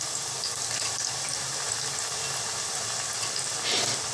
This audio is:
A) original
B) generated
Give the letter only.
A